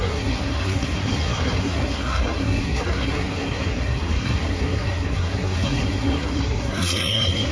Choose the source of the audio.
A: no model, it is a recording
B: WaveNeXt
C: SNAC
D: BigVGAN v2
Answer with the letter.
C